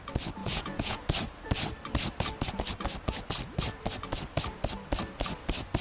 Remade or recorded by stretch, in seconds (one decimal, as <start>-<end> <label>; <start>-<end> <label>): 0.0-0.4 recorded; 0.4-1.0 remade; 1.0-5.8 recorded